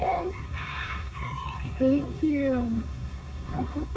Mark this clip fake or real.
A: fake